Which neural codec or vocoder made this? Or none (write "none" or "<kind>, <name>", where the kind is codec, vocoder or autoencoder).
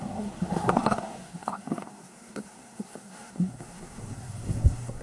codec, SNAC